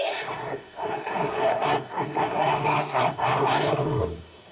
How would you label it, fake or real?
fake